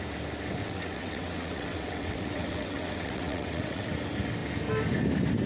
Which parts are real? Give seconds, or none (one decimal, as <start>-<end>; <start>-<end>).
0.0-0.6; 3.9-5.5

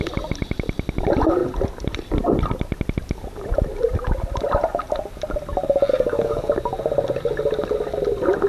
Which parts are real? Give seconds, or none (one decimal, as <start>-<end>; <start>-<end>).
0.0-5.9; 6.5-8.5

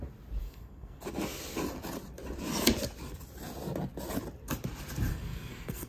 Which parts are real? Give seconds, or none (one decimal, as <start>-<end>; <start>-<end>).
0.0-0.4; 1.0-5.1

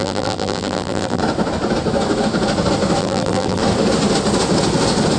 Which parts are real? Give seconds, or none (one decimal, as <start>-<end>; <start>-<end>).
1.2-3.0; 3.6-5.2

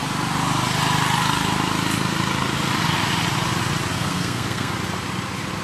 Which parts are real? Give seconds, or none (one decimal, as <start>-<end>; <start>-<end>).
0.0-3.9; 4.7-5.6

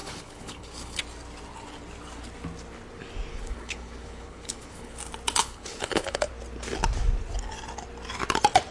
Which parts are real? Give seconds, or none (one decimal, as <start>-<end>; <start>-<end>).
1.0-3.3; 5.0-5.4; 6.3-8.7

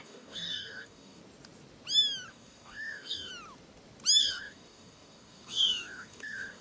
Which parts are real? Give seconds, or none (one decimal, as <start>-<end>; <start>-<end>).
1.2-2.3; 3.3-4.2

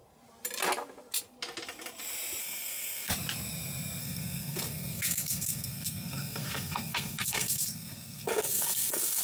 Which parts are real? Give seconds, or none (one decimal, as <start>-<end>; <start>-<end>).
0.0-2.4; 3.1-4.0